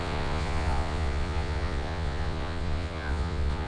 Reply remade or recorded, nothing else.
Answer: remade